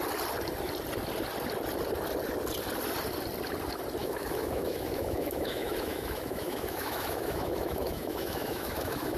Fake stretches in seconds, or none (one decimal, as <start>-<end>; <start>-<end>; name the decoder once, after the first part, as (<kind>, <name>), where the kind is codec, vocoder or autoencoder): 4.0-9.2 (autoencoder, DAC-VAE)